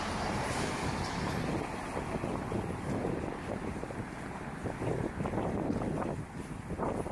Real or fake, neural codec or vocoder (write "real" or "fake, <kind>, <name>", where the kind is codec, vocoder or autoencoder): real